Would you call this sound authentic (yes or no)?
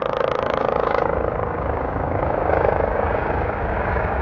no